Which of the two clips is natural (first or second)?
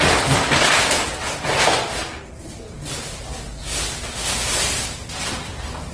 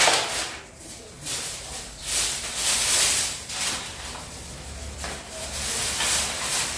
first